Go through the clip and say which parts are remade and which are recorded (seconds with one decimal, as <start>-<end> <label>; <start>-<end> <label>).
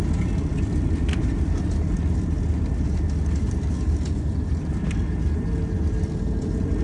0.0-6.8 recorded